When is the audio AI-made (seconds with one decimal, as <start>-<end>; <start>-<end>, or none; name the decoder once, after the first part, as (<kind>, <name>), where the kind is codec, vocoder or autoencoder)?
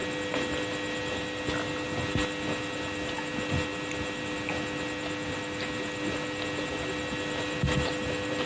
none